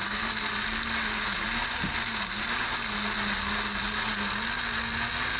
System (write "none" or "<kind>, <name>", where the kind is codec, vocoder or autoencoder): none